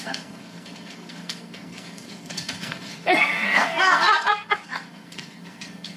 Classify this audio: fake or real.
fake